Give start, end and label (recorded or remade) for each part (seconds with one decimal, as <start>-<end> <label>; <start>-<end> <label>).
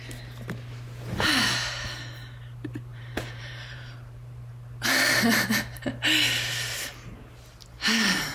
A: 0.0-2.9 recorded; 2.9-4.5 remade; 4.5-8.3 recorded